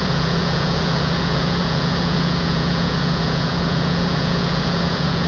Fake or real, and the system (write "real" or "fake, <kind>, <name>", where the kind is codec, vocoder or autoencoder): fake, vocoder, Vocos